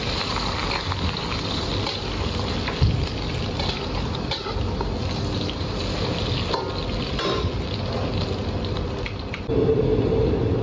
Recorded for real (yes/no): yes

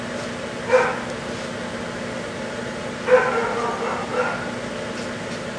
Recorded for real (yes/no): yes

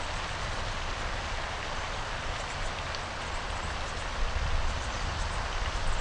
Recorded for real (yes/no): yes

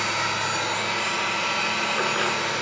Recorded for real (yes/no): yes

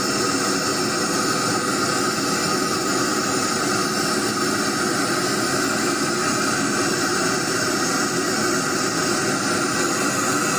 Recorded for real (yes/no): yes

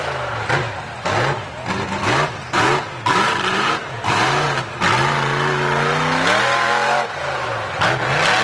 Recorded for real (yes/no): yes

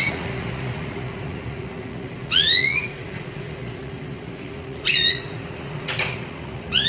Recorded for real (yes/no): no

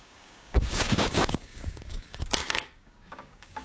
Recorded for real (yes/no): no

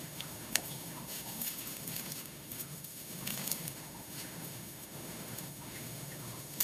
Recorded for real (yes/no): no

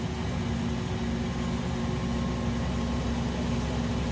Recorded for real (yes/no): yes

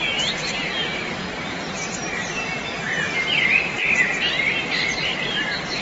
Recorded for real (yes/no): yes